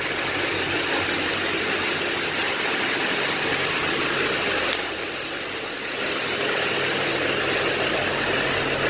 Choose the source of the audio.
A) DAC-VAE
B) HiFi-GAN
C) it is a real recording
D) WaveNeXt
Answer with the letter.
C